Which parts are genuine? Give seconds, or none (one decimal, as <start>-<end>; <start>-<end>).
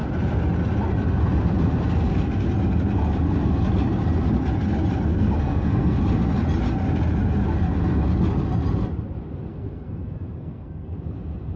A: 0.0-5.1; 6.0-9.5; 11.0-11.6